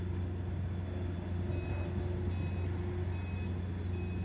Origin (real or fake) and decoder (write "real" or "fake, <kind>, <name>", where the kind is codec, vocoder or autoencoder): real